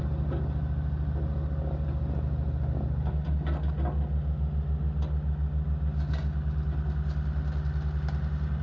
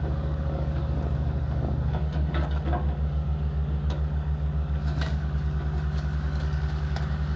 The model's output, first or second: second